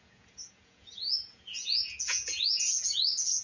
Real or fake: fake